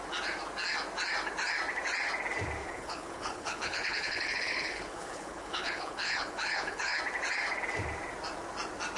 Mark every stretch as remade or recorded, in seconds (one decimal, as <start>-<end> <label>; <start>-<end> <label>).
0.0-2.6 recorded; 2.6-7.0 remade; 7.0-9.0 recorded